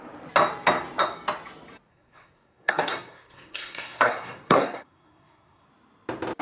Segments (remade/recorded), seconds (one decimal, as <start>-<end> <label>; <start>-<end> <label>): 0.0-1.9 recorded; 1.9-5.7 remade; 5.7-6.4 recorded